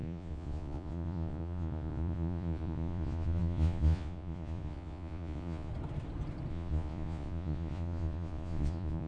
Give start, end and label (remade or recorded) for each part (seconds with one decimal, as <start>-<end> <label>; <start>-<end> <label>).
0.0-5.7 remade; 5.7-6.5 recorded; 6.5-9.1 remade